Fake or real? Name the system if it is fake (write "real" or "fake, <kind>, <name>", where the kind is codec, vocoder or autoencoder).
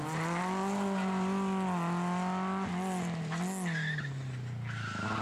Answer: real